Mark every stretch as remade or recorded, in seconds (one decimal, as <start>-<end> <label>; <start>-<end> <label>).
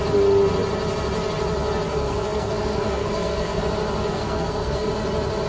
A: 0.0-1.9 recorded; 1.9-3.6 remade; 3.6-4.1 recorded; 4.1-4.9 remade; 4.9-5.5 recorded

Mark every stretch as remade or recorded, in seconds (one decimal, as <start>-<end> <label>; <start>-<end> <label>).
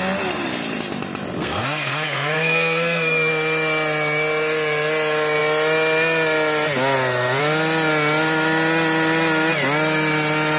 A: 0.0-1.4 recorded; 1.4-3.3 remade; 3.3-10.6 recorded